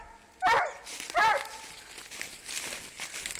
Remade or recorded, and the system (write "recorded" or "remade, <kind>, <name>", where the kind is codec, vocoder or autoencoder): recorded